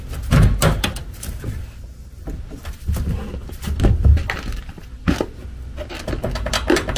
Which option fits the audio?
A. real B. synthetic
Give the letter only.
A